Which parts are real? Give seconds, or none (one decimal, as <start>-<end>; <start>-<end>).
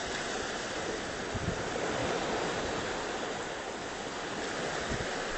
0.0-5.4